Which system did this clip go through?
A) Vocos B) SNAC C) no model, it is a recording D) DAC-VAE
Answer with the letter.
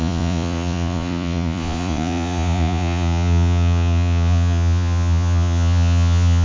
A